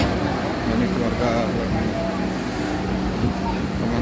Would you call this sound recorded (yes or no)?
yes